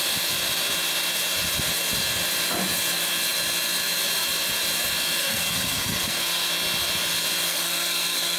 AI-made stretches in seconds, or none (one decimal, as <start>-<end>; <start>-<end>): 5.2-6.5; 7.5-8.4